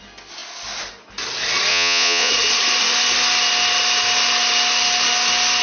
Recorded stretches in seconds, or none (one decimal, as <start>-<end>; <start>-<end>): 0.0-1.7; 2.3-5.6